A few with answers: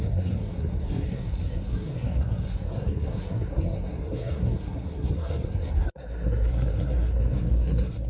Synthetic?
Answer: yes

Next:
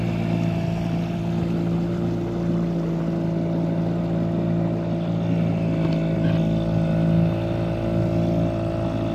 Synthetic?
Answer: no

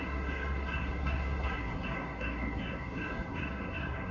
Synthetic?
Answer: yes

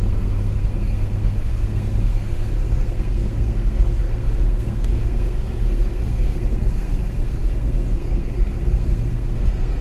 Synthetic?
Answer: yes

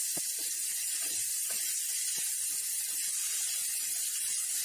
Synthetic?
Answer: no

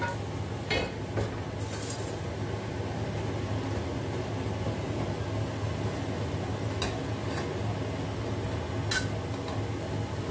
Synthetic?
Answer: no